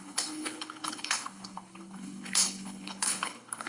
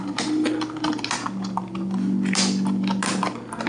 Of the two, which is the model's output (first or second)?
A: first